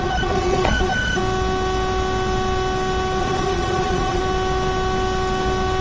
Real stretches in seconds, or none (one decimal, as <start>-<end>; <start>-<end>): 1.2-3.2; 4.2-5.8